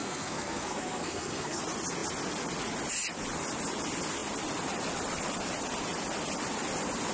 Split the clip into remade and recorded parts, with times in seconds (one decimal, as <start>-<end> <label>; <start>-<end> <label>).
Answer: 0.0-1.6 remade; 1.6-7.1 recorded